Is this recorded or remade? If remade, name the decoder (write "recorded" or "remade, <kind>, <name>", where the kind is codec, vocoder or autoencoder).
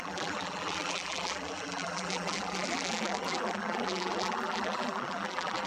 remade, vocoder, BigVGAN v2